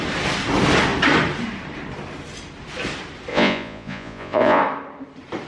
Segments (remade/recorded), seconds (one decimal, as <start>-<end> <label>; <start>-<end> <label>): 0.0-3.3 recorded; 3.3-4.6 remade; 4.6-5.5 recorded